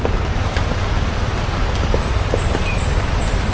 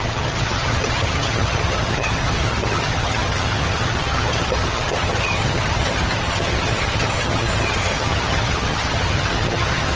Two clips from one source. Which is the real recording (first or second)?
first